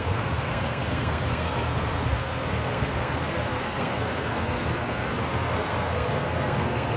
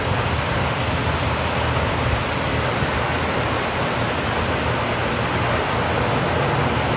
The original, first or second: second